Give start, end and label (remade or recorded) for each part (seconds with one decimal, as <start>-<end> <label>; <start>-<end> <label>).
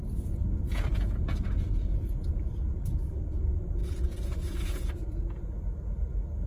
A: 0.0-0.5 recorded; 0.5-2.3 remade; 2.3-3.8 recorded; 3.8-4.9 remade; 4.9-6.5 recorded